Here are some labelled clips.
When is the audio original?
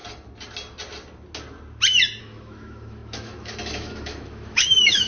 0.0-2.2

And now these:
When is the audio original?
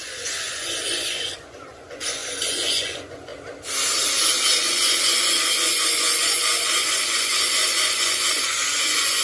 3.3-4.6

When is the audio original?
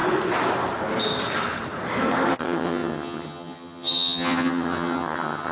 0.0-2.4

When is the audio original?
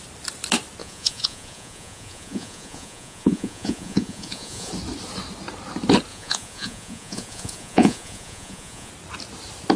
0.0-0.8; 4.7-6.1; 8.9-9.8